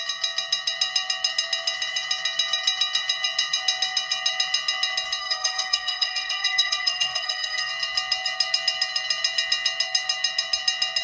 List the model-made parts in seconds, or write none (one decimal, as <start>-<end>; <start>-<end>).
5.2-7.7